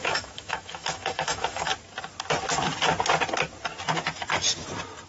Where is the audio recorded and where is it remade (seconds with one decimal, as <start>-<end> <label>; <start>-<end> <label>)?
0.0-1.7 remade; 1.7-5.1 recorded